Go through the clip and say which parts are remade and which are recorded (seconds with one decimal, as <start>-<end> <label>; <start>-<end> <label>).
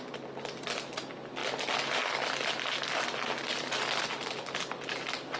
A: 0.0-5.4 recorded